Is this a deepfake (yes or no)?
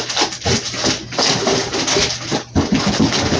no